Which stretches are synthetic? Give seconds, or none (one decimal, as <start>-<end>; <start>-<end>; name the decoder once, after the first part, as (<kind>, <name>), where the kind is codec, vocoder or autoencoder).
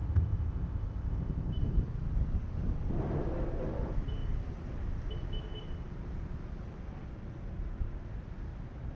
0.0-1.5 (codec, ZipCodec)